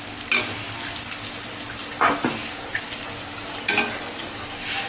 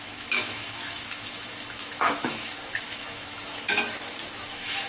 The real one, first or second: first